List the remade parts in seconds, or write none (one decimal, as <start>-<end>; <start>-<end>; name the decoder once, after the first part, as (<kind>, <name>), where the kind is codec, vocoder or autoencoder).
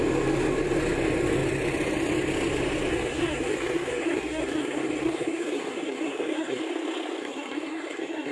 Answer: 2.9-6.6 (codec, SNAC); 7.2-8.3